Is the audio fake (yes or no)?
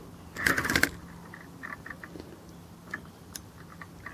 no